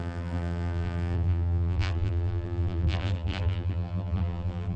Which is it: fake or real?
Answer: fake